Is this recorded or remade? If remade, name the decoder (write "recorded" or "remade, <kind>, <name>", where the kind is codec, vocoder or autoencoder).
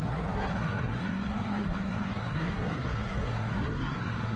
remade, codec, SNAC